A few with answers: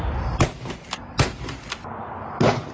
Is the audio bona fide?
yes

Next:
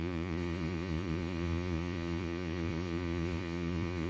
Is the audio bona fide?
no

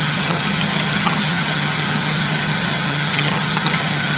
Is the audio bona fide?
no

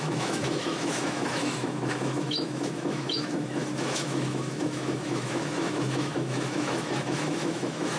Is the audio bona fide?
no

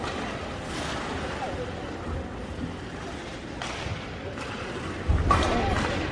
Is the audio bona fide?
yes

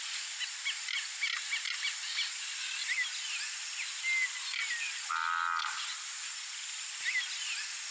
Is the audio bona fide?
yes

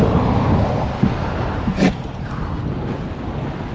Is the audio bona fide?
yes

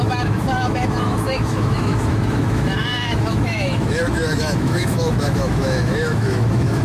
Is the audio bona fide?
no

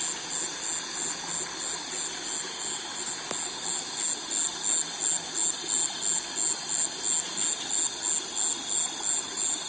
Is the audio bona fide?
yes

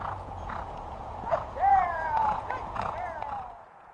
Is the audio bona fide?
no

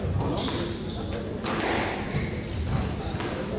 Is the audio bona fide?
yes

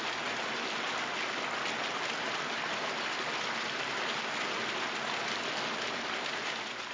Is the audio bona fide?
yes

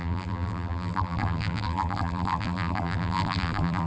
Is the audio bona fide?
no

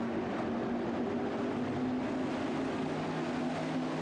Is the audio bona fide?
yes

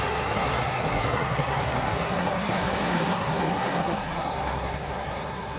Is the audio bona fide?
no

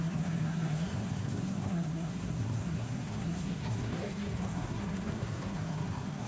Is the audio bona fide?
no